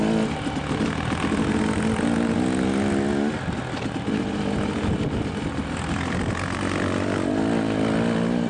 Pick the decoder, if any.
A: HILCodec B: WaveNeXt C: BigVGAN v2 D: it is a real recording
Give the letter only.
D